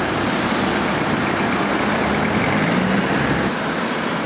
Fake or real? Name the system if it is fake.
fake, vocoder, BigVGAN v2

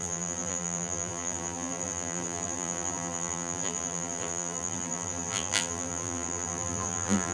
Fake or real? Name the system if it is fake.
fake, vocoder, BigVGAN v2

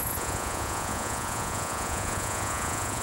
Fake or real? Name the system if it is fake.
fake, vocoder, Vocos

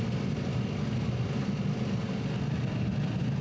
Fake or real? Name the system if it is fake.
real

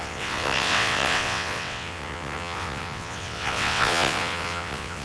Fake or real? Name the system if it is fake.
fake, vocoder, WaveNeXt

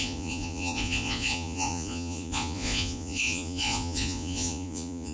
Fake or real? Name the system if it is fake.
fake, vocoder, Vocos